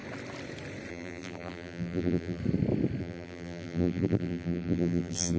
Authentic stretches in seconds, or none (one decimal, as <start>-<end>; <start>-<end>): 0.0-0.9; 2.4-3.0